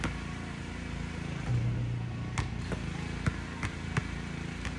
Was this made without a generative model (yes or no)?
yes